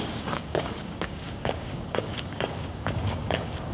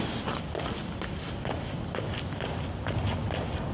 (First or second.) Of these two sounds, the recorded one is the second